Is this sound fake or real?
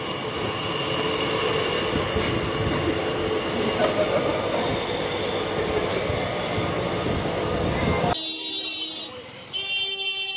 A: real